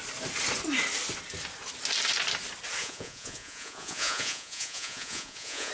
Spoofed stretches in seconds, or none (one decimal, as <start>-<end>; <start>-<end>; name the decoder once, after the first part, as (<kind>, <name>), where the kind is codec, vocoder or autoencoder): 2.8-5.7 (vocoder, Vocos)